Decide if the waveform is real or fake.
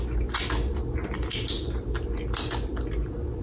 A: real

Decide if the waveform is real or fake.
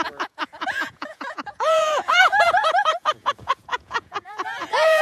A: fake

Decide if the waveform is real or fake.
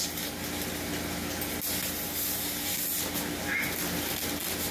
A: real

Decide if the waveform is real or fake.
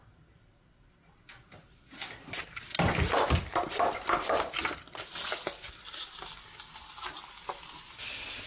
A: fake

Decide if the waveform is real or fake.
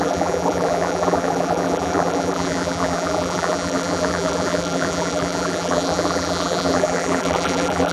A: fake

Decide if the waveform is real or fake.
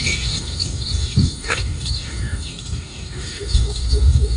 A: fake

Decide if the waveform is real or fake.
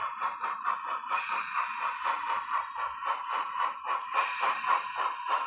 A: fake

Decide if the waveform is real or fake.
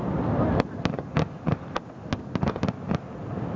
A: real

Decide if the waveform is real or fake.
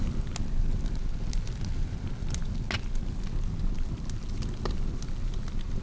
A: real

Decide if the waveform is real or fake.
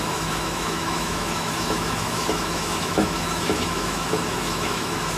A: fake